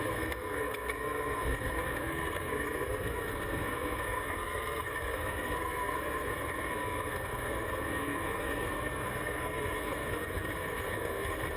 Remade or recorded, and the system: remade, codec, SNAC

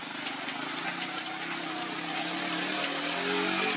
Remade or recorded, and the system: recorded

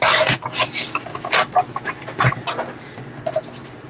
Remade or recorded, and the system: recorded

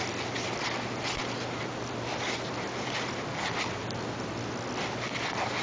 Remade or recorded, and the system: recorded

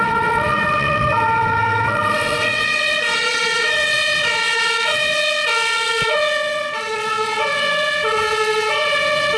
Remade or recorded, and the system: remade, vocoder, WaveNeXt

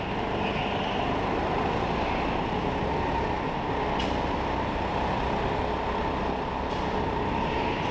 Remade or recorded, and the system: recorded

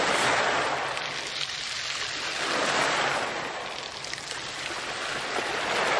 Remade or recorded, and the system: recorded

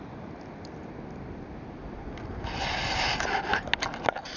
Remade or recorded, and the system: recorded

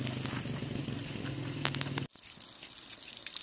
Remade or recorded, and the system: recorded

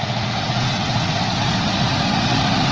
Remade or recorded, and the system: remade, vocoder, Vocos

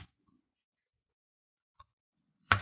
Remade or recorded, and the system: remade, vocoder, Vocos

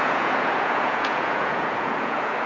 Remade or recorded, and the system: remade, vocoder, Vocos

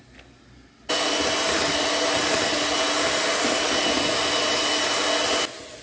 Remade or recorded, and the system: recorded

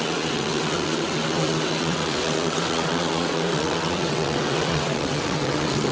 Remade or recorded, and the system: remade, vocoder, WaveNeXt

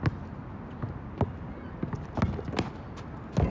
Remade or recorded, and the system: recorded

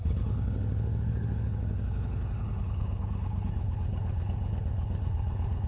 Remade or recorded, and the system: remade, codec, HILCodec